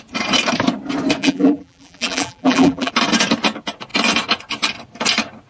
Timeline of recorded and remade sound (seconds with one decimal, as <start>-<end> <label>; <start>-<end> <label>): 0.0-1.2 recorded; 1.2-2.9 remade; 2.9-5.5 recorded